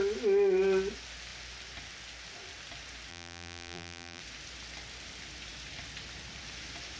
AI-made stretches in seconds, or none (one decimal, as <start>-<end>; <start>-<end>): 3.1-4.2